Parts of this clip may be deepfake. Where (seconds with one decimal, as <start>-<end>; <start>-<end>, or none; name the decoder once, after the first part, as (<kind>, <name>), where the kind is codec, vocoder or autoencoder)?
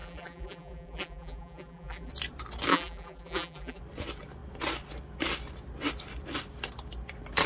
0.0-2.1 (vocoder, BigVGAN v2); 2.7-3.8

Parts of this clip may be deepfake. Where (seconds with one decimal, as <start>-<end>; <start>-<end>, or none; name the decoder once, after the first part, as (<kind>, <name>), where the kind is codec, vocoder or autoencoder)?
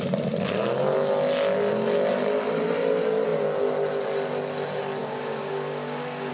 5.0-6.3 (codec, DAC)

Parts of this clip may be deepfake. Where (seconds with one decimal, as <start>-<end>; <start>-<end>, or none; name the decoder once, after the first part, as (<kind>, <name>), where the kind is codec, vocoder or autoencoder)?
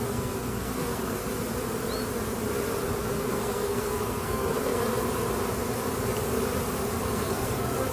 0.0-1.2 (codec, SNAC); 3.0-4.8; 7.0-7.9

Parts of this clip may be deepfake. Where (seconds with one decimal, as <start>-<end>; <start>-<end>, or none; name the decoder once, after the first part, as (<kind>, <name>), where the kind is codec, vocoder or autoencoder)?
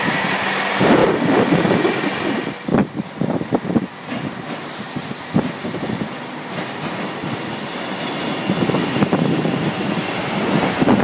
none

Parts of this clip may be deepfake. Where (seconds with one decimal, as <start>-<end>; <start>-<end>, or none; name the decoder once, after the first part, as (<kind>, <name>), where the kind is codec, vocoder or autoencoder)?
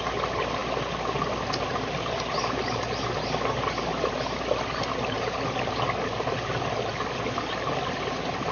none